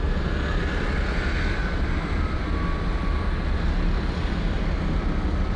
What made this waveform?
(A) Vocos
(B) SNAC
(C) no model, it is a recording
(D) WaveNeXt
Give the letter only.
C